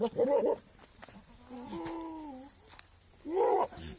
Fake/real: real